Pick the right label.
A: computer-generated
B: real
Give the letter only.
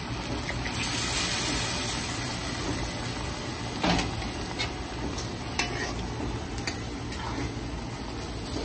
B